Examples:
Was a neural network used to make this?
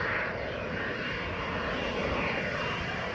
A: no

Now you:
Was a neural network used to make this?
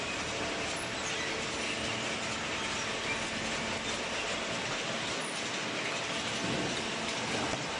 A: no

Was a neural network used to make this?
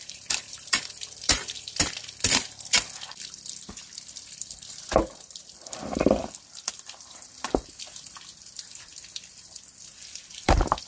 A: yes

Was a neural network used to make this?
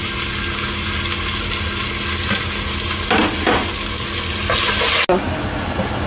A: no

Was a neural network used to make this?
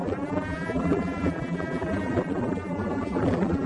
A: yes